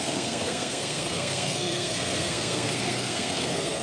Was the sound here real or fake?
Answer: fake